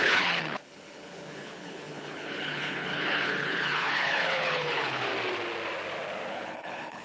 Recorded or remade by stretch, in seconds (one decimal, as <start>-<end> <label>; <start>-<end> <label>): 0.0-5.1 remade; 5.1-6.3 recorded; 6.3-7.0 remade